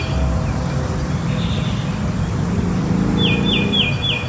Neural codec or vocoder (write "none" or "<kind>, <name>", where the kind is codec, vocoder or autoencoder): none